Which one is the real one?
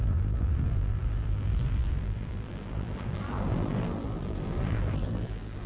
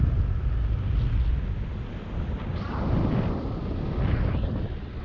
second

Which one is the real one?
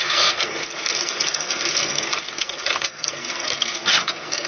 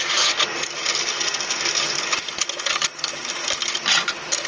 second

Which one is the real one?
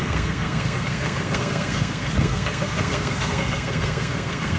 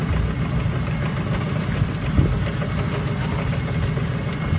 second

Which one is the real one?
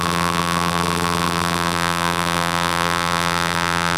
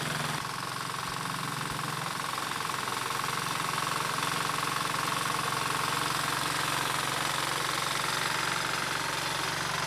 second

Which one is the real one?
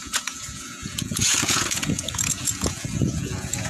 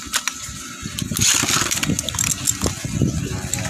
second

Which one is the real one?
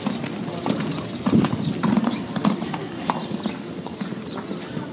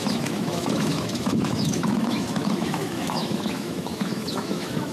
first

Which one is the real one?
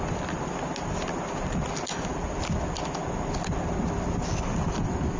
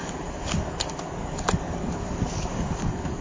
first